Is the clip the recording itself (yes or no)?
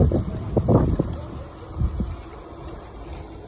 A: yes